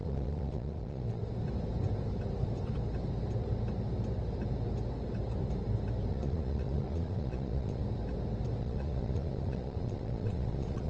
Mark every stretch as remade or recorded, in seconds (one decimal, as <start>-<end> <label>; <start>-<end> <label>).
0.0-1.2 remade; 1.2-6.1 recorded; 6.1-7.8 remade; 7.8-8.6 recorded; 8.6-10.9 remade